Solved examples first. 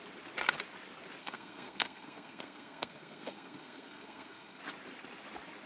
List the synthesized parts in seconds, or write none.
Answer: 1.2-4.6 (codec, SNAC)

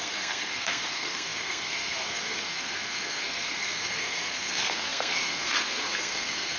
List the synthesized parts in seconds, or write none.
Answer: 0.0-6.6 (codec, SNAC)

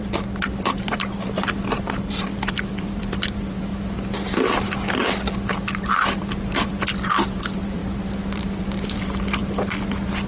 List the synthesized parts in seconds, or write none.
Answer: 0.0-3.7 (vocoder, BigVGAN v2); 6.5-9.4

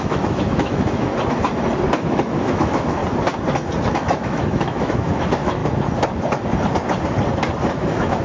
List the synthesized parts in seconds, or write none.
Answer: 0.0-1.1 (autoencoder, DAC-VAE); 2.0-3.0; 3.9-5.6; 7.7-8.2

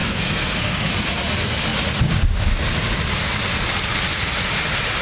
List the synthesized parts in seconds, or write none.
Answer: 0.0-0.9 (codec, SNAC)

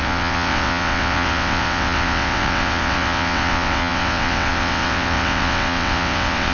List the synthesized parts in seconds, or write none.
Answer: 0.0-6.5 (vocoder, WaveNeXt)

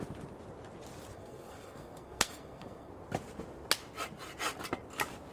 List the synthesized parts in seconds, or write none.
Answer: 1.1-2.9 (codec, SNAC)

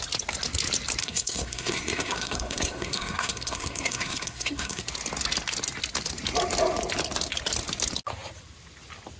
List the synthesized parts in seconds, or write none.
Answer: 1.0-4.8 (codec, SNAC)